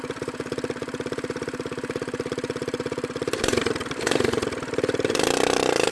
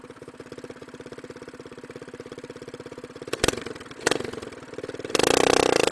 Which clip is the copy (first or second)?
first